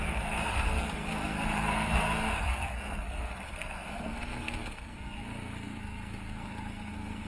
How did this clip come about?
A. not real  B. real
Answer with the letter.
A